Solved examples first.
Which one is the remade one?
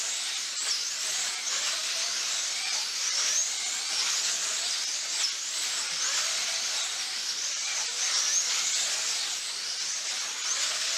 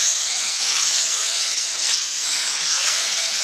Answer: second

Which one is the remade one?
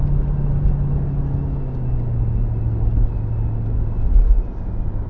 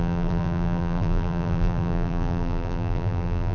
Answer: second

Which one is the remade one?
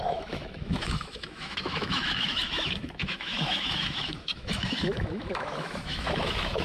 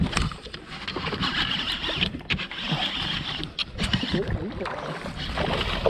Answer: first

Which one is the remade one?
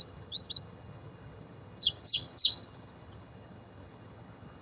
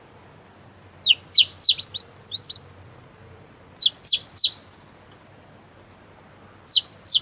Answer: first